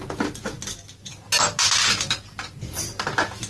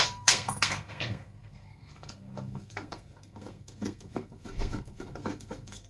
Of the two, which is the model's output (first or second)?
second